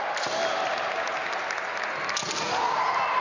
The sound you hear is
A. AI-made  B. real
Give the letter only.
B